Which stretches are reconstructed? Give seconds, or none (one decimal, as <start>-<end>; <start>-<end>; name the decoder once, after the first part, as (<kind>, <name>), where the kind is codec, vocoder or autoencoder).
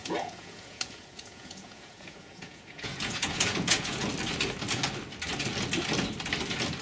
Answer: 0.0-4.1 (vocoder, Vocos)